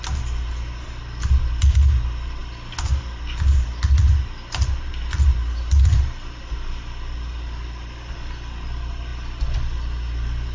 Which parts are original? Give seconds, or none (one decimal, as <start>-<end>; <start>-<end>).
0.0-10.5